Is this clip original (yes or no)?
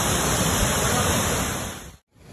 no